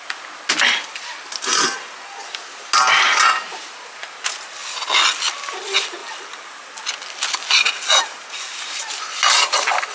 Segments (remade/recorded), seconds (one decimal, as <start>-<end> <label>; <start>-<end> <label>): 0.0-9.9 recorded